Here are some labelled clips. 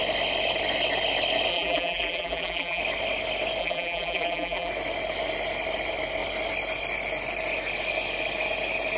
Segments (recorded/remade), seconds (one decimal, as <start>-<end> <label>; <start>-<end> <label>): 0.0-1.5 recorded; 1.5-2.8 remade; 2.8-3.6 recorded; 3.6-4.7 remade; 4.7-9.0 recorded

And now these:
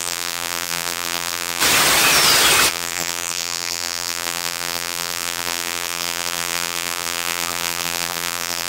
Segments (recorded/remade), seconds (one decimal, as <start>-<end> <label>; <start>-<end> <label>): 0.0-1.6 remade; 1.6-2.7 recorded; 2.7-8.7 remade

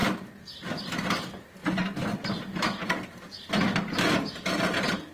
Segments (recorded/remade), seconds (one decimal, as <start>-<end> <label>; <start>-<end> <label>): 0.0-1.6 recorded; 1.6-3.5 remade; 3.5-5.1 recorded

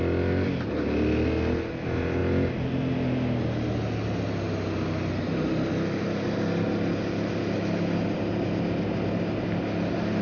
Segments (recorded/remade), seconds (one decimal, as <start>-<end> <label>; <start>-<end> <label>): 0.0-10.2 recorded